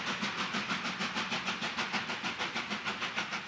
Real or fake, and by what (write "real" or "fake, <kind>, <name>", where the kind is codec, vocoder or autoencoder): real